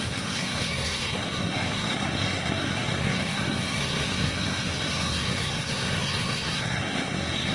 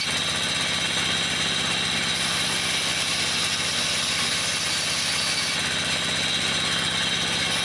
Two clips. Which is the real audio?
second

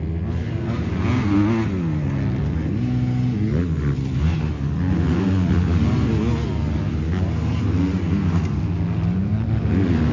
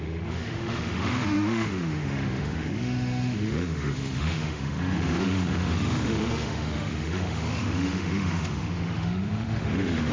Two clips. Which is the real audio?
first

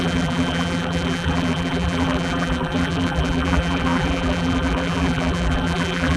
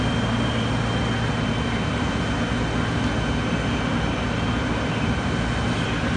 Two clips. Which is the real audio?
second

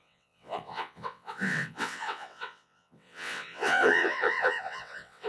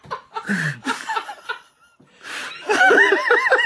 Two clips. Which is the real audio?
second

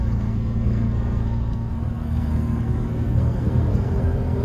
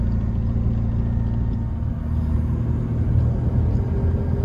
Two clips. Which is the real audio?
second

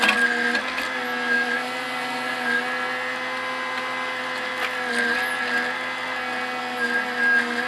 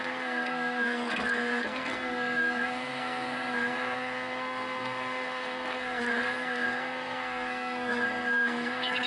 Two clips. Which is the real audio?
first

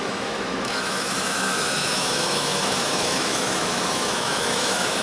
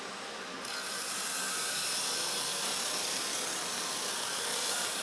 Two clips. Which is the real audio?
second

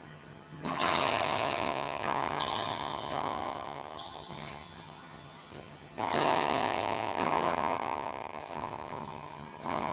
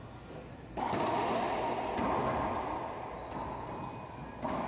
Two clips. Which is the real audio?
second